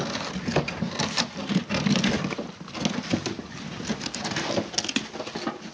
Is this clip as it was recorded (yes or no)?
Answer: yes